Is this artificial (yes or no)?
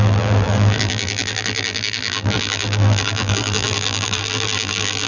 yes